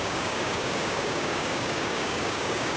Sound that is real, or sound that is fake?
fake